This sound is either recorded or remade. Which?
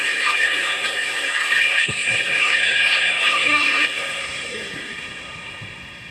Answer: remade